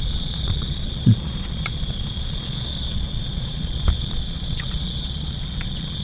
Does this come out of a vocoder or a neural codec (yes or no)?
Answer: yes